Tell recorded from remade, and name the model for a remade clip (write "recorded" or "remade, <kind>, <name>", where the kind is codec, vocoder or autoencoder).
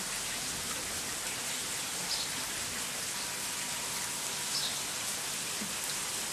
recorded